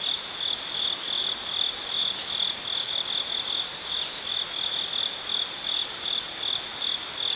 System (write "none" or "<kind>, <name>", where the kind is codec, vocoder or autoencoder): none